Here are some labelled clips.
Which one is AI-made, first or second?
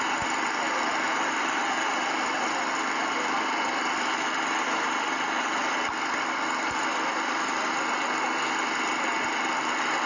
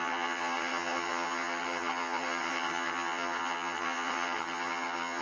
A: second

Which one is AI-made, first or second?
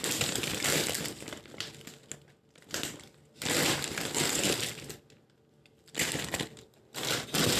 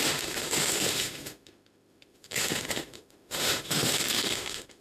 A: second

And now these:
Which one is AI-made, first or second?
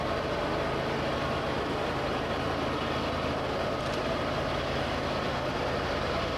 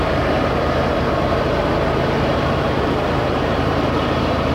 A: second